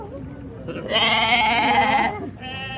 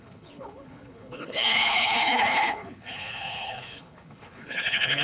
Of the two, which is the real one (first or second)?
first